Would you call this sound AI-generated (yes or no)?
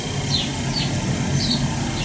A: no